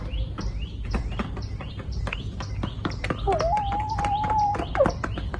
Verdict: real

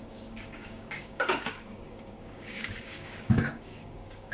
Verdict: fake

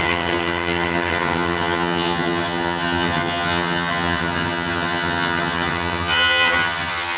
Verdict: fake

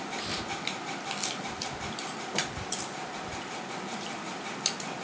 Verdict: real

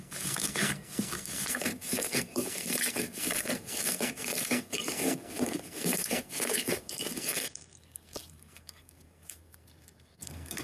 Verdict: fake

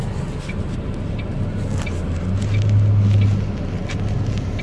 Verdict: real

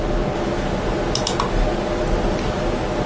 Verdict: real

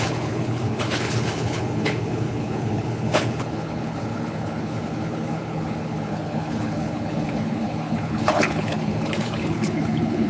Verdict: fake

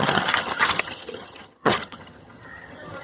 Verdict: fake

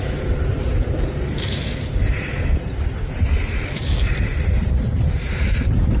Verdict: fake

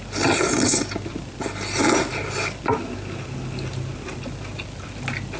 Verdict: real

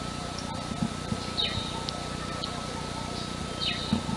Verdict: real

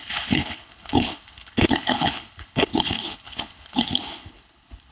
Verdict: fake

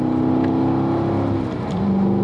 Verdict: real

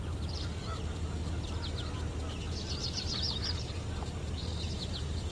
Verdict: real